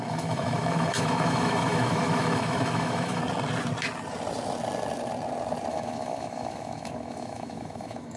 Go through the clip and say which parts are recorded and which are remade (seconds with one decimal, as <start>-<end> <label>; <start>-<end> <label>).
0.0-3.2 remade; 3.2-5.7 recorded; 5.7-8.2 remade